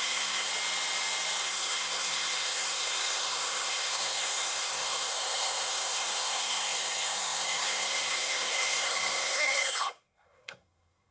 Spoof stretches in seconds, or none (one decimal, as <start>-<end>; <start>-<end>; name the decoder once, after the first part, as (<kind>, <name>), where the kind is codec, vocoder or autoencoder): 0.0-0.5 (codec, SNAC); 1.4-11.1

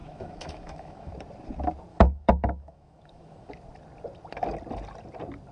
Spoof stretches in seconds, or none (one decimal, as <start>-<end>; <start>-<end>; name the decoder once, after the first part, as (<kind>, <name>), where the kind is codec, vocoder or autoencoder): 0.0-1.1 (autoencoder, DAC-VAE); 1.9-3.5

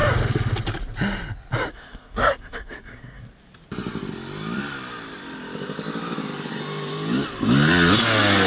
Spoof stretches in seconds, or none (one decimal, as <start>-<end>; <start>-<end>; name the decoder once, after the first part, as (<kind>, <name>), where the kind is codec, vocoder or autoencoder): 1.7-3.3 (codec, SNAC)

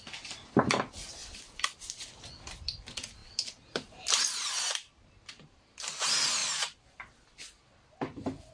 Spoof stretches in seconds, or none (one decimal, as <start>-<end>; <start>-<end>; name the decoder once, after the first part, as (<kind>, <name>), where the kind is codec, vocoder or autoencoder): none

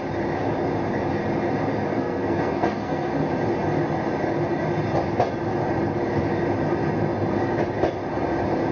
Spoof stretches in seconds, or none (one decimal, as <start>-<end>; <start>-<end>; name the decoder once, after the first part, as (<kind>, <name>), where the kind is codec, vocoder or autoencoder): 1.9-3.1 (codec, SNAC)

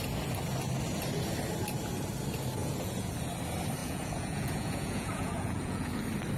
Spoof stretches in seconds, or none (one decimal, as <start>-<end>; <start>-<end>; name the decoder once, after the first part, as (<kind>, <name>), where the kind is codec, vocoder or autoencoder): 2.6-3.1 (vocoder, Vocos); 3.8-5.9

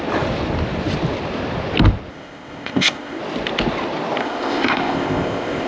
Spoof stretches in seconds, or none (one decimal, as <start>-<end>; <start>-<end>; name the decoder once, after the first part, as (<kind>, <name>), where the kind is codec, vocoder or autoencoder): 2.1-3.2 (codec, ZipCodec); 4.2-5.7

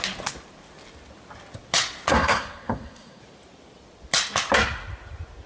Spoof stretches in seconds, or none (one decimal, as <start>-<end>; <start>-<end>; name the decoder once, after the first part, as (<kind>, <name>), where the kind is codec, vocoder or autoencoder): 2.1-3.2 (codec, SNAC)